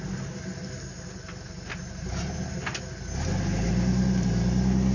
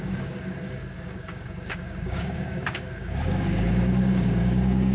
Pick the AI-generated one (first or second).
second